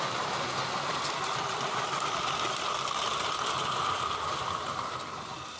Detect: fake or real real